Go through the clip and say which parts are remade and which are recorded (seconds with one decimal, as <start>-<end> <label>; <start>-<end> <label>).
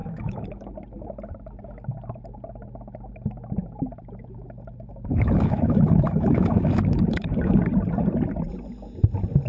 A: 0.0-0.7 remade; 0.7-5.1 recorded; 5.1-7.6 remade; 7.6-9.5 recorded